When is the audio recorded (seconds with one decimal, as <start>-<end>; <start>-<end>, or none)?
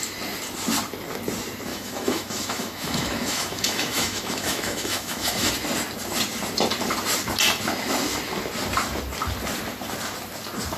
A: 0.0-1.7; 5.5-10.8